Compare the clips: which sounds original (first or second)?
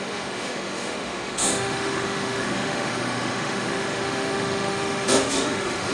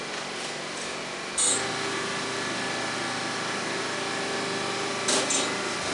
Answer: second